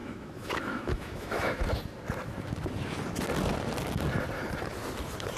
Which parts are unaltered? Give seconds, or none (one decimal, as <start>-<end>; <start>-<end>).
1.6-5.4